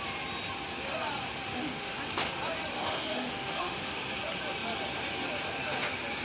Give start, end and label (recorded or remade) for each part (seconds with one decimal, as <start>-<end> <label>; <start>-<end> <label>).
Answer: 0.0-1.5 recorded; 1.5-2.0 remade; 2.0-2.7 recorded; 2.7-4.0 remade; 4.0-6.2 recorded